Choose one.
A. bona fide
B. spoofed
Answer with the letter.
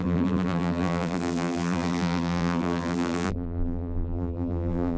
B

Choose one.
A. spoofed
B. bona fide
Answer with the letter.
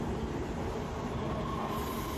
B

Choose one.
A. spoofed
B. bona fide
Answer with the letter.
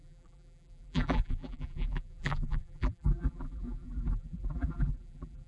A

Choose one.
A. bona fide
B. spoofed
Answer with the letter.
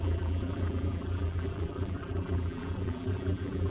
B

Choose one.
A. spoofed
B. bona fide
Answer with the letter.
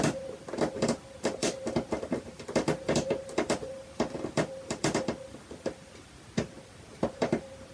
A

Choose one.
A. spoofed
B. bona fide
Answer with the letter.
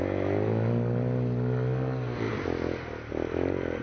B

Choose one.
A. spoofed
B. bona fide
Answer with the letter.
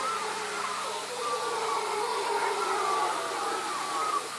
B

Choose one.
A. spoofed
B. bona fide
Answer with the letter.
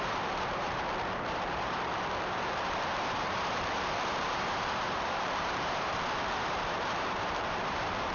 A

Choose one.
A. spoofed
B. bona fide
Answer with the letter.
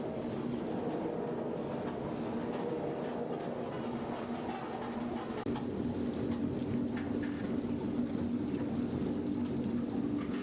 B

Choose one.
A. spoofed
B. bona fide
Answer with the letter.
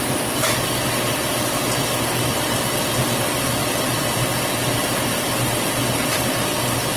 B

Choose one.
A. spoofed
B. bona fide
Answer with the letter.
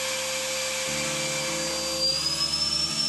B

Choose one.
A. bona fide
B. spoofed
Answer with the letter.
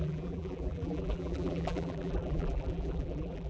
B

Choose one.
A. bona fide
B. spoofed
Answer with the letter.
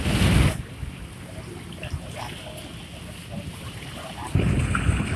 A